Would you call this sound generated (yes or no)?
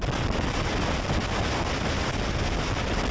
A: no